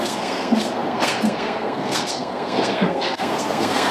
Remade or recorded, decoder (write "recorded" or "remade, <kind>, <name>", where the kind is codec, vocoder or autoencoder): remade, codec, SNAC